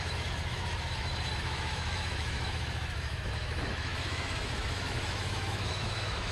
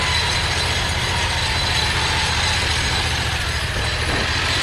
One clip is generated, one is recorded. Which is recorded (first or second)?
second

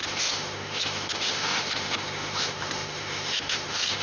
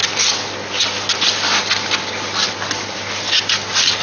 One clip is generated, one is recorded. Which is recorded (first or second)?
second